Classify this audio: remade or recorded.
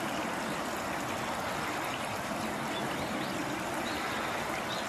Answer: recorded